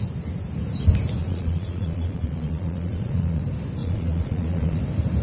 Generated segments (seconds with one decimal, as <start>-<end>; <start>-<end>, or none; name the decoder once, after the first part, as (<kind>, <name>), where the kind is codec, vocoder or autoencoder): 1.2-3.4 (vocoder, Vocos); 3.8-4.8